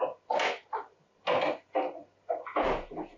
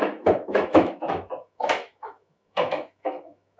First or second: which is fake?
second